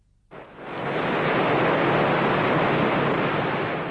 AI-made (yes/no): no